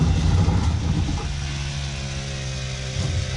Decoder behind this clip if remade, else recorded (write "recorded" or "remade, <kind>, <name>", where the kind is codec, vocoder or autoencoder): recorded